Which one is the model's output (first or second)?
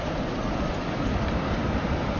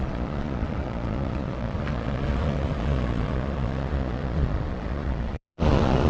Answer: second